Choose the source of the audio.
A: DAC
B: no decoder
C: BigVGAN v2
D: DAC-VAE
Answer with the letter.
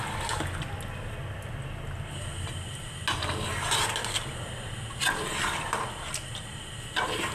B